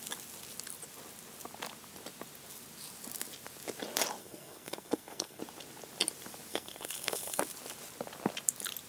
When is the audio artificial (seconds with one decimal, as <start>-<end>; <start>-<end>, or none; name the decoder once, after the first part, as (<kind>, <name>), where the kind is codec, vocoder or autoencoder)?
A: 4.2-5.4 (codec, SNAC); 6.5-7.4